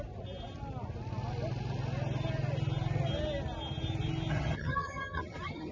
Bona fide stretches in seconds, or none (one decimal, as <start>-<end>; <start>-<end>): 0.0-4.3